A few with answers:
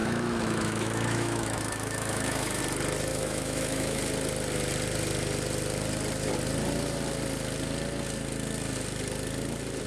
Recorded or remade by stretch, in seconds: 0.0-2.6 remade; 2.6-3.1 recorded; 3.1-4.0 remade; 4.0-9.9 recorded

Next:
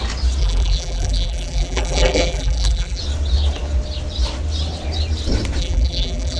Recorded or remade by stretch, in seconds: 0.0-0.4 recorded; 0.4-3.0 remade; 3.0-5.6 recorded; 5.6-6.4 remade

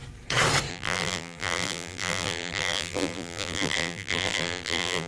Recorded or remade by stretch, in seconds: 0.0-0.7 recorded; 0.7-5.1 remade

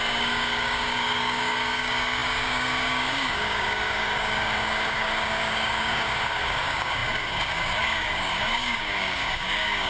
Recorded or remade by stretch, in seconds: 0.0-9.9 remade

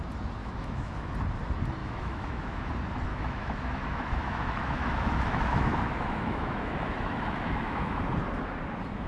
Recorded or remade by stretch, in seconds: 0.0-0.4 recorded; 0.4-1.1 remade; 1.1-1.8 recorded; 1.8-2.7 remade; 2.7-3.1 recorded; 3.1-8.0 remade; 8.0-9.1 recorded

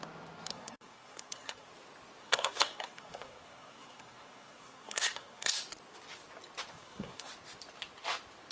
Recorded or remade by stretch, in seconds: 0.0-0.5 recorded; 0.5-1.7 remade; 1.7-2.2 recorded; 2.2-5.6 remade; 5.6-6.7 recorded; 6.7-7.3 remade; 7.3-8.5 recorded